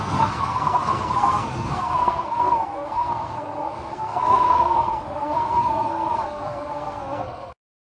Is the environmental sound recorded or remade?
remade